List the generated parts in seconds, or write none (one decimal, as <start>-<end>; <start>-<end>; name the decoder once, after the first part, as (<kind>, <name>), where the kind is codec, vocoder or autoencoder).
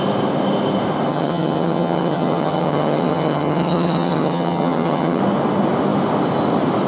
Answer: 1.1-5.2 (vocoder, HiFi-GAN)